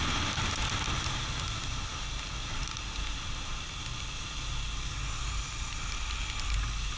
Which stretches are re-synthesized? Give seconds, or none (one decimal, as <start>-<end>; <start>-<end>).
none